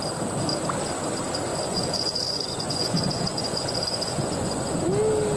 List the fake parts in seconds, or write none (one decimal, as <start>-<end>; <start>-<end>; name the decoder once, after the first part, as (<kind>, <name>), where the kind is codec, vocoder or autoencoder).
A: 1.5-4.7 (vocoder, Vocos)